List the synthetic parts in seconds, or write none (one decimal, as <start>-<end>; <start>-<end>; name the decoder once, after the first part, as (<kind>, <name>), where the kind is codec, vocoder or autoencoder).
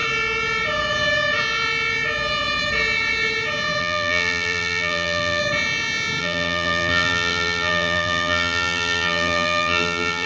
3.8-5.4 (vocoder, BigVGAN v2); 6.2-10.3